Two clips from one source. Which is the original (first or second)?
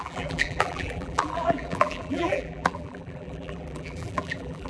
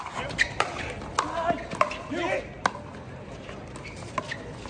second